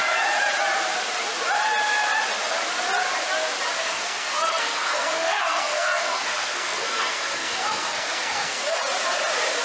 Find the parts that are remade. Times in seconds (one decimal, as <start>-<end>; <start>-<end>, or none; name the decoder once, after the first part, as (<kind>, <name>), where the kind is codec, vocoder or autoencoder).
3.8-8.8 (codec, SNAC)